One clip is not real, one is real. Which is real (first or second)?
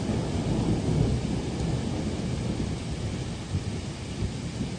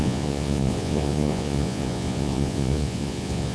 first